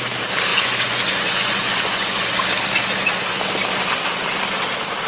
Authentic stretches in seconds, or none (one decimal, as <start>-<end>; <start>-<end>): 0.0-0.5; 2.3-5.1